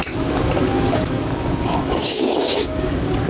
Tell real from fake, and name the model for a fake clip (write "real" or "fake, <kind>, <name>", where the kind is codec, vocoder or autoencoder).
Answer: fake, codec, DAC